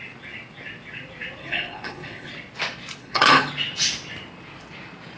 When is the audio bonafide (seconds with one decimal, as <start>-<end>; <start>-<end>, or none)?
0.0-1.4; 2.3-3.0; 3.5-5.2